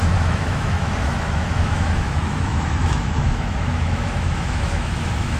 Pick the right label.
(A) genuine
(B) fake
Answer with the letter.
B